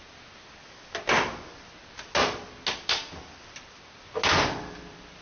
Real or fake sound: real